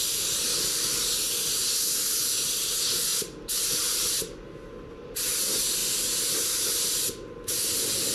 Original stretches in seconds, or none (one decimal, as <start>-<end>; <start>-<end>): 0.0-3.1; 4.2-5.8; 6.6-8.1